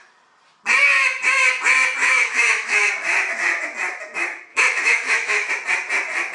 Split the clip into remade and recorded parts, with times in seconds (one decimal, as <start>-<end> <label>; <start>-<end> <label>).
0.0-2.0 recorded; 2.0-2.9 remade; 2.9-4.5 recorded; 4.5-5.5 remade; 5.5-6.3 recorded

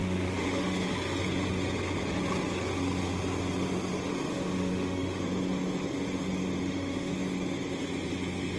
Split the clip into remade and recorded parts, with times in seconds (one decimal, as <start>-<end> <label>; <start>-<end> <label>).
0.0-0.9 remade; 0.9-4.1 recorded; 4.1-5.2 remade; 5.2-6.6 recorded; 6.6-7.1 remade; 7.1-8.6 recorded

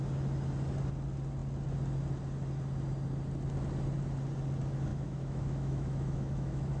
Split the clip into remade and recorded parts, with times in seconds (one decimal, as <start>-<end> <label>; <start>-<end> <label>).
0.0-4.9 recorded; 4.9-6.8 remade

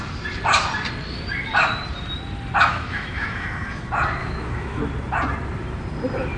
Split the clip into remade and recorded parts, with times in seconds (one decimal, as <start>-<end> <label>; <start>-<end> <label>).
0.0-2.7 recorded; 2.7-3.8 remade; 3.8-4.2 recorded; 4.2-4.8 remade; 4.8-6.4 recorded

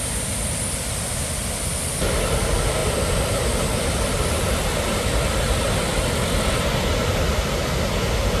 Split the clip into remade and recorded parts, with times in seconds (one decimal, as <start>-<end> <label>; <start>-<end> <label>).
0.0-8.4 recorded

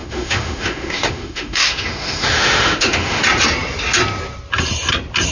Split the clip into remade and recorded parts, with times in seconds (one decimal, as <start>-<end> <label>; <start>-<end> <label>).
0.0-3.2 remade; 3.2-5.3 recorded